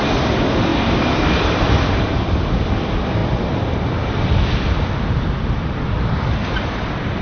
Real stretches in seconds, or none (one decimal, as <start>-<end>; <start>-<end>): none